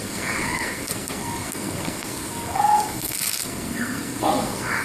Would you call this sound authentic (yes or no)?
no